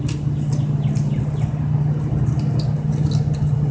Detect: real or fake real